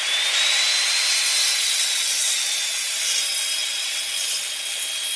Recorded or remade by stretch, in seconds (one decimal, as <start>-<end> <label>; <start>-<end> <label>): 0.0-1.4 recorded; 1.4-3.2 remade; 3.2-3.6 recorded; 3.6-4.8 remade; 4.8-5.2 recorded